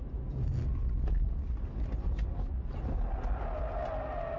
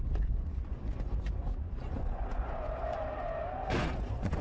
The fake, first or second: second